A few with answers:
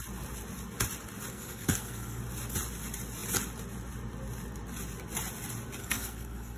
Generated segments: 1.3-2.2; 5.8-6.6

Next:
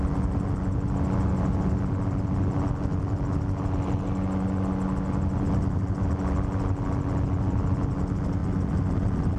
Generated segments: none

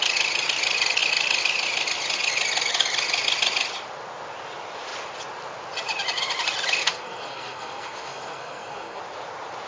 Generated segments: 6.8-9.0

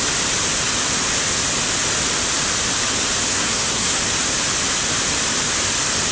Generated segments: 3.3-4.0

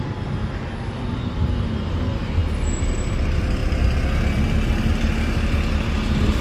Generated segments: none

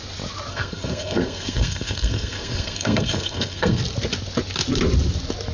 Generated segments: 0.5-3.8